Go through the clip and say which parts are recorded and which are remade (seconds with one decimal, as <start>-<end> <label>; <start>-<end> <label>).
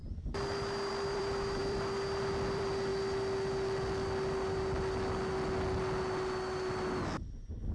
0.0-2.9 remade; 2.9-7.7 recorded